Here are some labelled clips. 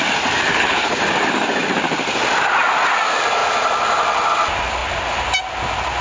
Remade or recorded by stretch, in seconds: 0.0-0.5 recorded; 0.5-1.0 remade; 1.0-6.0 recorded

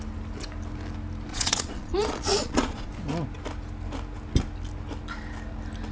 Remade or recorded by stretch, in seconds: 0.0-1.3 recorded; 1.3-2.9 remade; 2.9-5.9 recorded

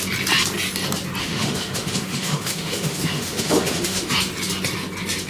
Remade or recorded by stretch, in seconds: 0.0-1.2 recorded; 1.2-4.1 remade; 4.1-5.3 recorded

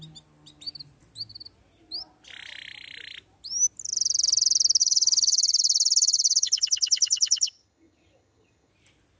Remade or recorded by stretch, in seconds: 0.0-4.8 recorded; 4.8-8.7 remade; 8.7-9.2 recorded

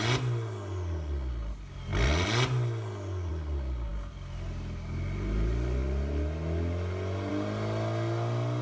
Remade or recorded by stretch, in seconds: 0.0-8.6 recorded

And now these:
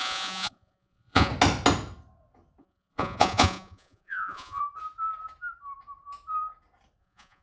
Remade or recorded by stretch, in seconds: 0.0-1.3 remade; 1.3-2.6 recorded; 2.6-4.6 remade; 4.6-7.0 recorded; 7.0-7.4 remade